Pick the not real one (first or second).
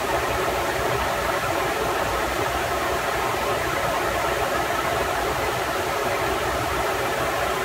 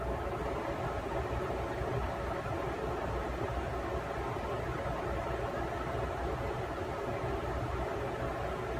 first